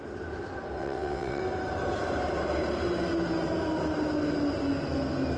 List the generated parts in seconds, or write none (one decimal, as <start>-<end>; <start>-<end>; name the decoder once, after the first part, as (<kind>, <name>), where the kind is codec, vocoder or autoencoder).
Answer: 0.8-1.4 (vocoder, WaveNeXt)